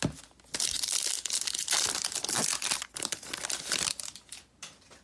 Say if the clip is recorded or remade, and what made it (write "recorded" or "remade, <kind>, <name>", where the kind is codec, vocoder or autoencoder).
recorded